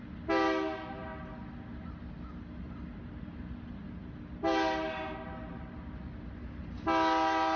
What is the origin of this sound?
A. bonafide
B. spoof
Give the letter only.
A